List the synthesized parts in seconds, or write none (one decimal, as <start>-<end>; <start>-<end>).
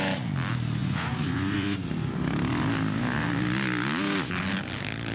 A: 0.8-1.8